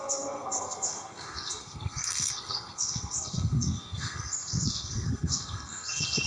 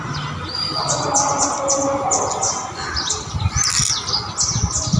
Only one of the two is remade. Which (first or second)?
first